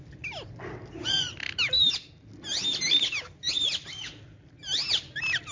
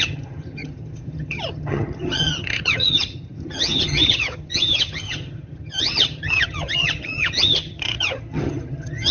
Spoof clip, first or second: second